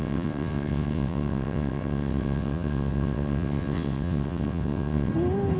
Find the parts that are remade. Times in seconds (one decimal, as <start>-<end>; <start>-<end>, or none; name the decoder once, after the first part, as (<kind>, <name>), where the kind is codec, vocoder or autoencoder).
0.0-5.1 (vocoder, WaveNeXt)